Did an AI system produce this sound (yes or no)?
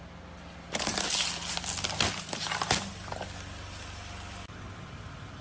no